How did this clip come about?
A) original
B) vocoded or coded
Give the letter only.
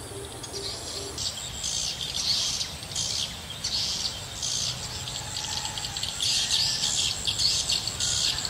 A